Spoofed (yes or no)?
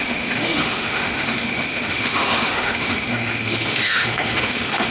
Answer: yes